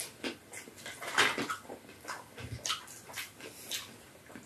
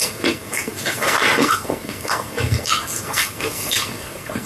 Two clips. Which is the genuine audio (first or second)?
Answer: first